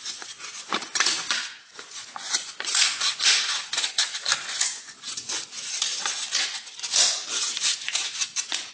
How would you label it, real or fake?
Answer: fake